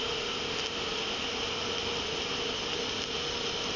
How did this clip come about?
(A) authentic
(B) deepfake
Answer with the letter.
A